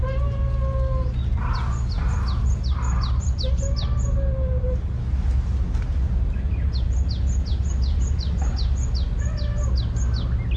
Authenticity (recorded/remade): recorded